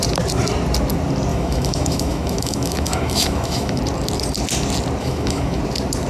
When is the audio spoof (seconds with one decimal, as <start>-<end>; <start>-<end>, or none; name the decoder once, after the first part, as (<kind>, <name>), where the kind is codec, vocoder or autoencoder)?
1.3-3.8 (autoencoder, DAC-VAE); 5.0-5.6